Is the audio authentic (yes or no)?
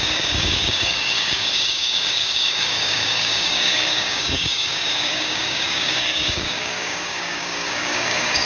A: no